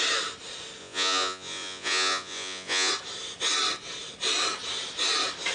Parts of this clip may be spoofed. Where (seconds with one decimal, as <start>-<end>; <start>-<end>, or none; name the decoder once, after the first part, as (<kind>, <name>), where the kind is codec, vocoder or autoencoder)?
0.8-2.9 (vocoder, Vocos)